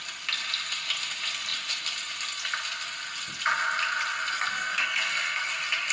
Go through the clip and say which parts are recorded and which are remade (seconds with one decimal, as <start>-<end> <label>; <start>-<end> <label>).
0.0-4.3 recorded; 4.3-5.5 remade; 5.5-5.9 recorded